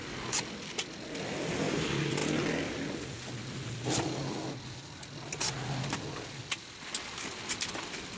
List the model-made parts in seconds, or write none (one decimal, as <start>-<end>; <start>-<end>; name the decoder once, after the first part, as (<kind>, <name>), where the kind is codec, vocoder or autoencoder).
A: none